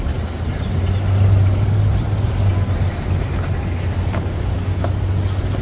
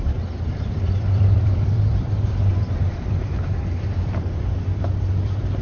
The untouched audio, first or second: first